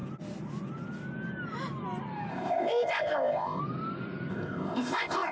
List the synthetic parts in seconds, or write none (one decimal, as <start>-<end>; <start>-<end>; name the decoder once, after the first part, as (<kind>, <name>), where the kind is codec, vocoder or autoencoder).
2.3-3.6 (codec, ZipCodec); 4.3-5.3